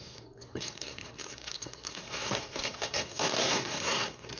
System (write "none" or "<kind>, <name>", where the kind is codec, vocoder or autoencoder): codec, SNAC